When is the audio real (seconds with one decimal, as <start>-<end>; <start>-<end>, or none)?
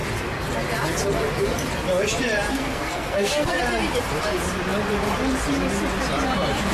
0.0-2.5; 3.6-6.7